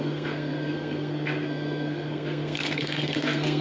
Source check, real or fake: fake